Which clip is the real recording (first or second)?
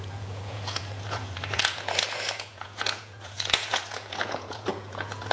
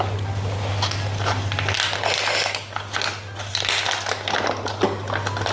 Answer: second